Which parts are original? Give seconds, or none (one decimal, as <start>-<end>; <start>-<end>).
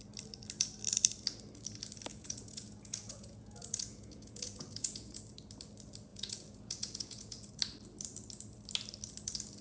0.0-2.1; 5.2-6.1; 7.5-9.6